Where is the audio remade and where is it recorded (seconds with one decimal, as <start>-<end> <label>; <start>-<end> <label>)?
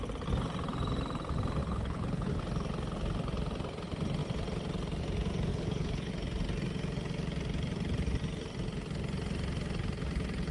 0.0-1.6 recorded; 1.6-2.4 remade; 2.4-5.5 recorded; 5.5-6.1 remade; 6.1-10.5 recorded